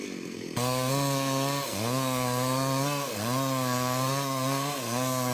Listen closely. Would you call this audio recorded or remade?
remade